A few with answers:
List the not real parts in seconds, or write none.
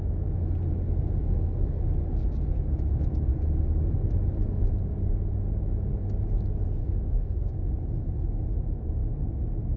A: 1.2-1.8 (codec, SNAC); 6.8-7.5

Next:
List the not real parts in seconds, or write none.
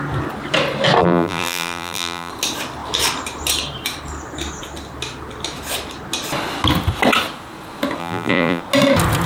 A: 1.0-2.3 (vocoder, BigVGAN v2); 8.0-8.6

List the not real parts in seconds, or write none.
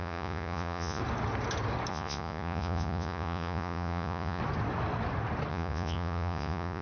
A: 0.0-1.0 (vocoder, Vocos); 1.9-4.4; 5.5-6.8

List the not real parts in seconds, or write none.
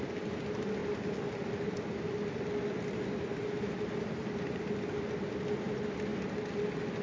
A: none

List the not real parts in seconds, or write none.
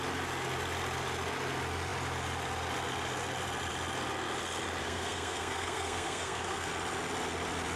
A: 4.8-6.7 (codec, SNAC)